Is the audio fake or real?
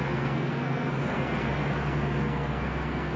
fake